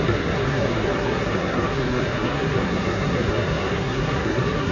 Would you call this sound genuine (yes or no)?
no